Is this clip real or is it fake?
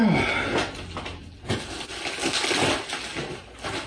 real